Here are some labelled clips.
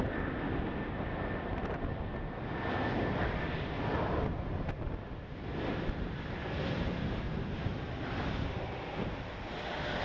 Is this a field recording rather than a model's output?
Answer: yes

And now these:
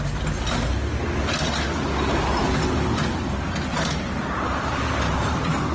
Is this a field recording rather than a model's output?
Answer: yes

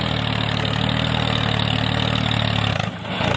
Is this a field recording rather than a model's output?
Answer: yes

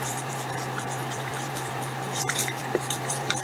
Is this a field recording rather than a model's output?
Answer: no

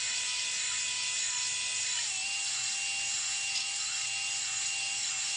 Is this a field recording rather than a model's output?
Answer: yes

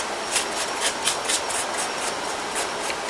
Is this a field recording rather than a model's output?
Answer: yes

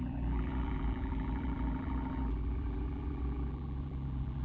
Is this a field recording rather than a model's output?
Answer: no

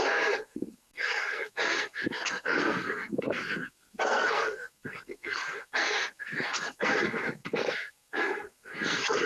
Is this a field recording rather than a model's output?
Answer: no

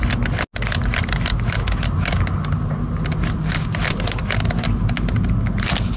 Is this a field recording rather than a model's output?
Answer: yes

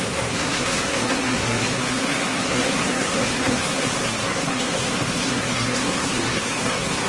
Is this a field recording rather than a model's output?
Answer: no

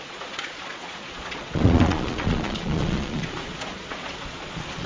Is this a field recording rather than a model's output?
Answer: no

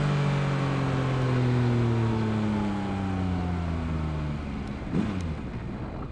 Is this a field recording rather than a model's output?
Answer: yes